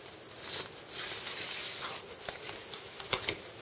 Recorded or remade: recorded